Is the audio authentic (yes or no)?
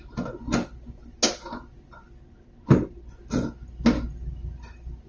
yes